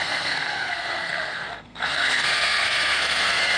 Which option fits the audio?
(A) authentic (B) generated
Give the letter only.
B